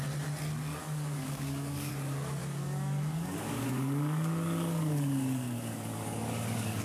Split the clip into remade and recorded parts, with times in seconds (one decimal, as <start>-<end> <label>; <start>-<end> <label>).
0.0-0.8 recorded; 0.8-1.9 remade; 1.9-2.4 recorded; 2.4-6.8 remade